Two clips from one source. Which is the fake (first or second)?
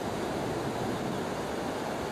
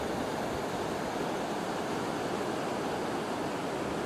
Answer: second